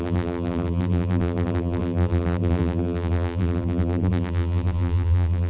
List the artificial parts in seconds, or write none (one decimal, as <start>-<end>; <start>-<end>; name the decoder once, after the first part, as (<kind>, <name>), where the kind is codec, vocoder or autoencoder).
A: 0.0-5.5 (vocoder, BigVGAN v2)

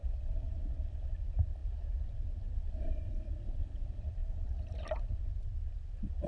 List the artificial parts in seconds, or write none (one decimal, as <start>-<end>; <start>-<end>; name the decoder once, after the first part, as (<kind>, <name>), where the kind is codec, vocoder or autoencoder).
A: 0.0-0.7 (vocoder, BigVGAN v2); 4.2-5.6

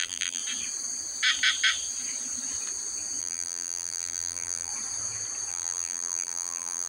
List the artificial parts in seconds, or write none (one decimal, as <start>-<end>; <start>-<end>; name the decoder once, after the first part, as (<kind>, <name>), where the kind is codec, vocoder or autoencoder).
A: 0.0-0.4 (vocoder, BigVGAN v2); 3.2-4.7; 5.5-6.9